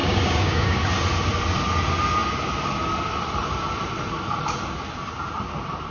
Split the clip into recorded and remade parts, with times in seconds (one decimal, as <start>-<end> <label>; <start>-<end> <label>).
0.0-0.8 remade; 0.8-5.9 recorded